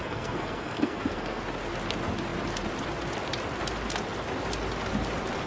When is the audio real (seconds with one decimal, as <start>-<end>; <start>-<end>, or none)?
1.4-5.5